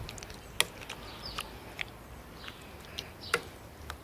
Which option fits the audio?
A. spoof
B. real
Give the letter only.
B